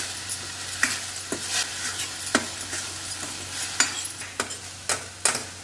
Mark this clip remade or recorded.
recorded